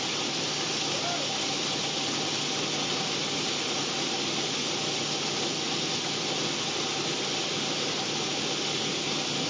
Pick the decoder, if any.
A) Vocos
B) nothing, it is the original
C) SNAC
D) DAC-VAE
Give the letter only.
B